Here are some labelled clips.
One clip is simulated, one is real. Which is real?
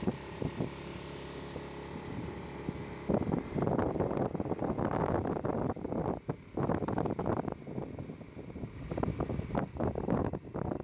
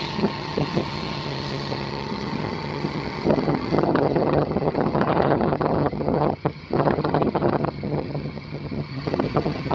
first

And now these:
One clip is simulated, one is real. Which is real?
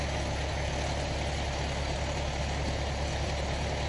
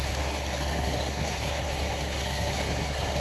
first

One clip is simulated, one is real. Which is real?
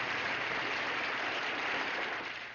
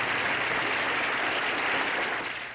second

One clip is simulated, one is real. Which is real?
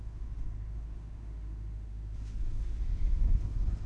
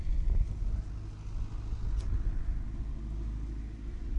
second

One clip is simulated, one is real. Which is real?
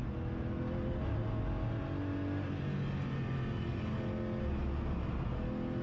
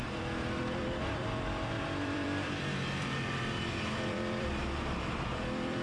first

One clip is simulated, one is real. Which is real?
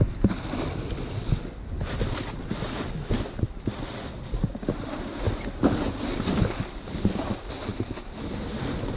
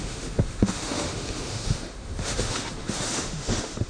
first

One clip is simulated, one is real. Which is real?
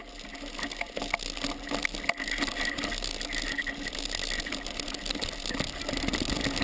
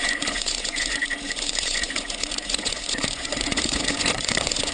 first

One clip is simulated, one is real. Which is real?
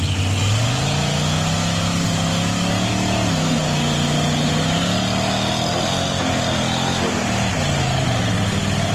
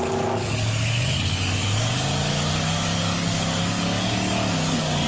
first